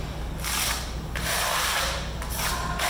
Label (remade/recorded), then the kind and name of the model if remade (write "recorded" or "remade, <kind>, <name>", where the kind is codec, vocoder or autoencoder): recorded